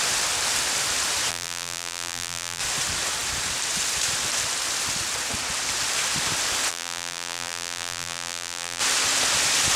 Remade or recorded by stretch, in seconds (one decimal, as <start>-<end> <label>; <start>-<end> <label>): 0.0-1.3 recorded; 1.3-2.6 remade; 2.6-6.7 recorded; 6.7-8.8 remade; 8.8-9.8 recorded